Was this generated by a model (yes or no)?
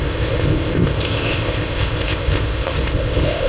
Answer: yes